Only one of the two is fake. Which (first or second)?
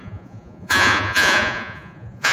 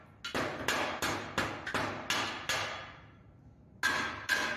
first